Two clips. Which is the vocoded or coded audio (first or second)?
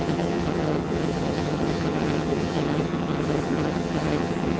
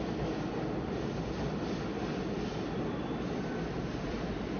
first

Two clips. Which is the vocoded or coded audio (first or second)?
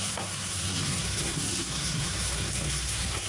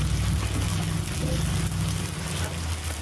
first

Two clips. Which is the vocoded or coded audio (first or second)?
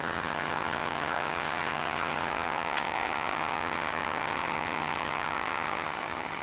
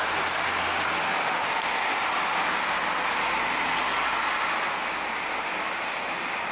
first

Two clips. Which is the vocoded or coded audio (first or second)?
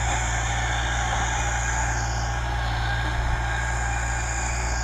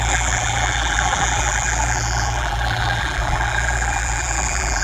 second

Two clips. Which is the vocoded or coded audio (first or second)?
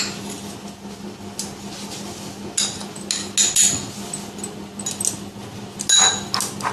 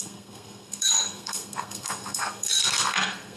second